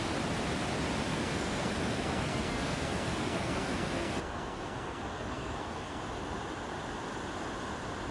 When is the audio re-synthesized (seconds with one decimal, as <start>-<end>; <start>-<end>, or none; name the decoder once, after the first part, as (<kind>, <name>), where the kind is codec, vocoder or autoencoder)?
1.1-6.0 (codec, SNAC)